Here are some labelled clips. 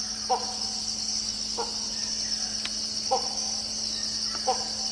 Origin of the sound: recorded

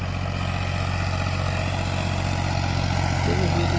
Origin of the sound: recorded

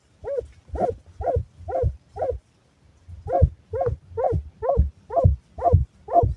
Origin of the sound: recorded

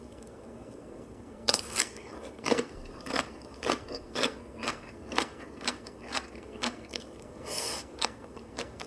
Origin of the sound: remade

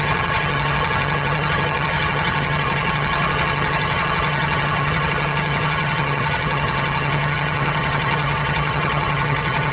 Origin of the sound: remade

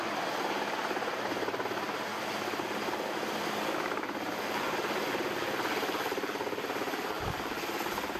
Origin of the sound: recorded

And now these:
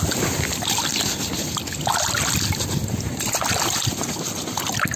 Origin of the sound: recorded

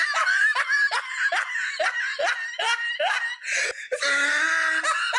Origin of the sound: recorded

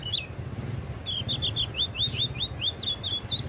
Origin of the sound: recorded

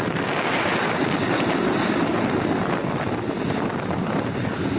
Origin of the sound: recorded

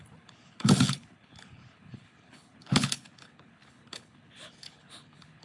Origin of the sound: remade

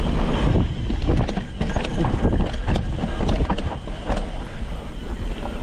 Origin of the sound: recorded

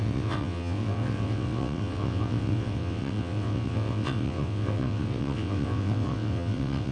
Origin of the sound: remade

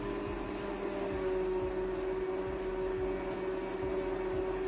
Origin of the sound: recorded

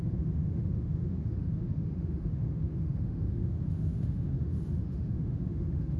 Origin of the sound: remade